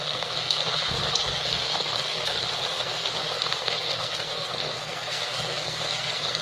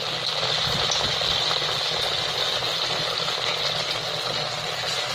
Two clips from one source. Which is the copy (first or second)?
first